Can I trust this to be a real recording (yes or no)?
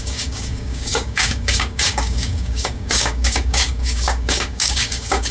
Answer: no